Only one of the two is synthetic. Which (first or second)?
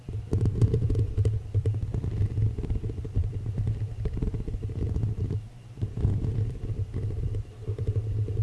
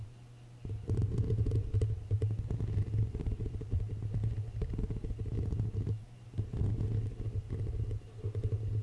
first